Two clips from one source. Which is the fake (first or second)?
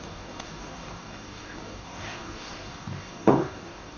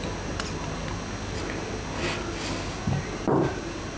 first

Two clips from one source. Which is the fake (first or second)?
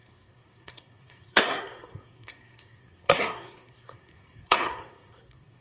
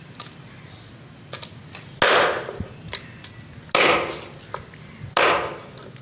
first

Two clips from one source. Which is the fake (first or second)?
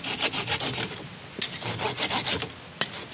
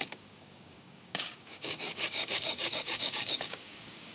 second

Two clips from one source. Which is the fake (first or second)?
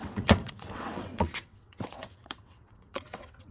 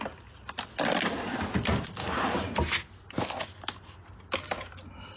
first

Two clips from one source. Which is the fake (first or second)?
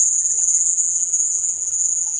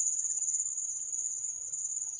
first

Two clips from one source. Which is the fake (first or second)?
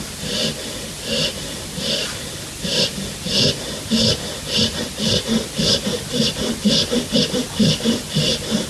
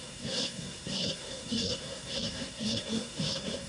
second